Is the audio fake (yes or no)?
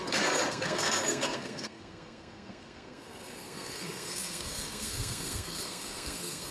yes